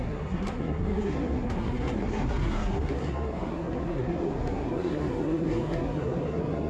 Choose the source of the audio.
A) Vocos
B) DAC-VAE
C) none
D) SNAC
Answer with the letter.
D